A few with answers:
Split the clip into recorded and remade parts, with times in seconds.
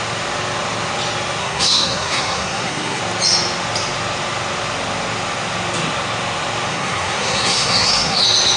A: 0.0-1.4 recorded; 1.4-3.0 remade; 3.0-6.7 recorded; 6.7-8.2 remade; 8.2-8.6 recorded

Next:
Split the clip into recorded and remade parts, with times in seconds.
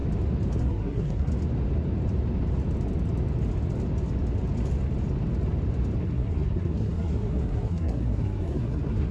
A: 0.0-0.6 recorded; 0.6-1.3 remade; 1.3-6.0 recorded; 6.0-9.1 remade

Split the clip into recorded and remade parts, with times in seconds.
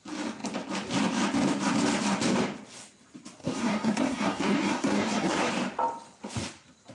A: 0.0-3.4 recorded; 3.4-5.5 remade; 5.5-6.9 recorded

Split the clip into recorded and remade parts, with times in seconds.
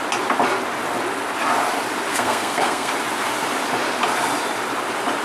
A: 0.0-2.1 recorded; 2.1-2.9 remade; 2.9-5.2 recorded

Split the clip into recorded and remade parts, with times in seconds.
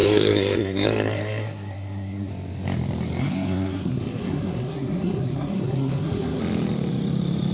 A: 0.0-2.3 remade; 2.3-3.2 recorded; 3.2-6.4 remade; 6.4-7.5 recorded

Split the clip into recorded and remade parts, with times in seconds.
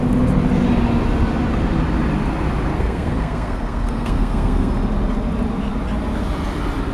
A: 0.0-2.7 recorded; 2.7-4.7 remade; 4.7-6.9 recorded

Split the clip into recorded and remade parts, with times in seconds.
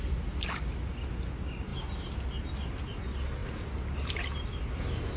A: 0.0-5.2 recorded